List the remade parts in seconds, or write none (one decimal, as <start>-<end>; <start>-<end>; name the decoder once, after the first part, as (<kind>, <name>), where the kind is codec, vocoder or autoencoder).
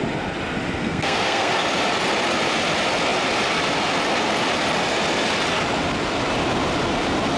0.8-1.5 (codec, SNAC)